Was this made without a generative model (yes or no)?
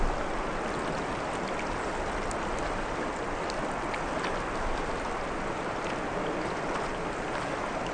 yes